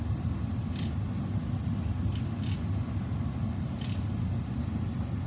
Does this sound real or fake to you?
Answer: real